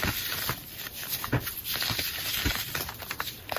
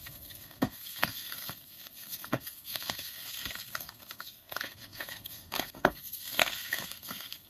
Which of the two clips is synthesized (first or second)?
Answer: second